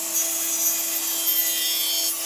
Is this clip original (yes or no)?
yes